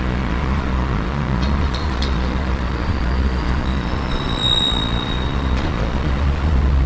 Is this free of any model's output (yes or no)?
no